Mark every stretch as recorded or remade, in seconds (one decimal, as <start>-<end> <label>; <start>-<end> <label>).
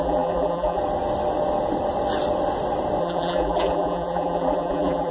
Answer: 0.0-0.8 remade; 0.8-3.0 recorded; 3.0-5.1 remade